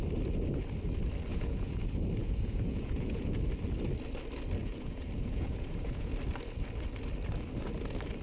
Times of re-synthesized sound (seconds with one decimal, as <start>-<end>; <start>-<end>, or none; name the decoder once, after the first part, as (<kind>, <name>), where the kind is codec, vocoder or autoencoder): 1.3-1.8 (vocoder, Vocos); 2.2-3.4; 4.6-6.1